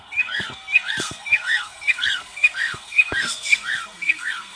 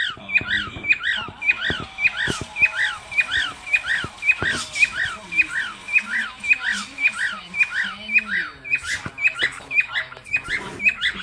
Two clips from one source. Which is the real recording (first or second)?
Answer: second